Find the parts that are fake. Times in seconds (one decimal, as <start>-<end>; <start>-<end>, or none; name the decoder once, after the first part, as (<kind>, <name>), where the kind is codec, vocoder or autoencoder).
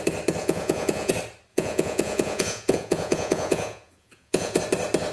0.4-1.1 (vocoder, Vocos); 1.5-4.6